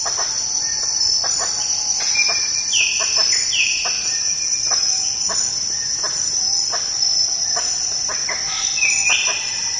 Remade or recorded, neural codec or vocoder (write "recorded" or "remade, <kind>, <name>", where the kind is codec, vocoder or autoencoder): recorded